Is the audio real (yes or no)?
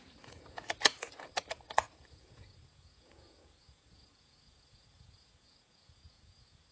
no